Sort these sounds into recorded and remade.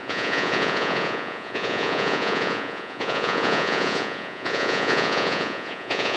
remade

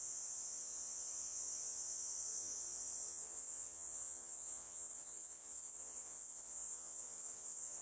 remade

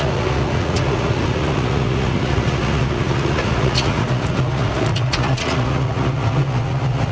remade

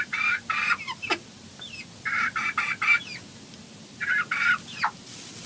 recorded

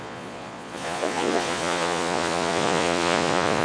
remade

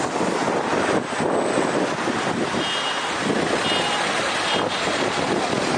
recorded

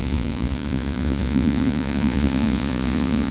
remade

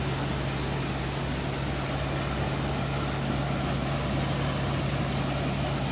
recorded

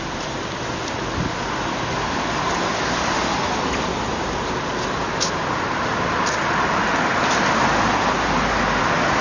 recorded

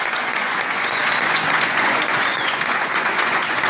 remade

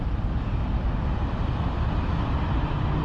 recorded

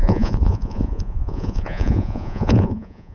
remade